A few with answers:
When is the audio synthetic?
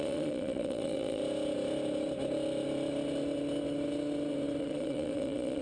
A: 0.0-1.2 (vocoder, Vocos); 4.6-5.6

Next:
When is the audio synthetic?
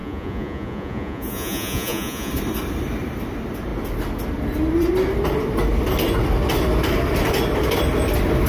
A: 0.0-2.3 (vocoder, Vocos)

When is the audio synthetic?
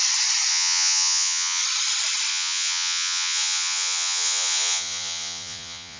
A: 0.5-1.6 (vocoder, Vocos); 2.3-6.0